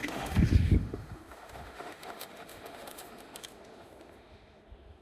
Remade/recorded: remade